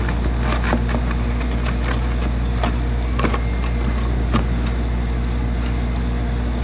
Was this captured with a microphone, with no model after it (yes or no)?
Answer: yes